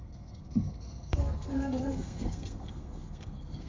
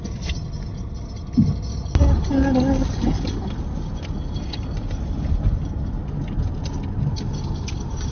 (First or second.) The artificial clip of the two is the first